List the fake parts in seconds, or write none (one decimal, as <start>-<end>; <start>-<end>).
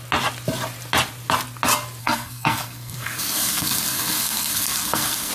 2.0-5.3